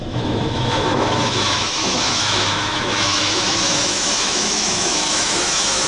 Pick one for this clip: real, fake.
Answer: fake